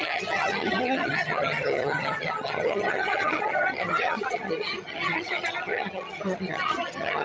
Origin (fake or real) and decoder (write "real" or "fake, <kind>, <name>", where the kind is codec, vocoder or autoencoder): fake, vocoder, HiFi-GAN